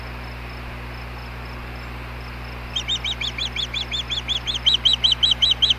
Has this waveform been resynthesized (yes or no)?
no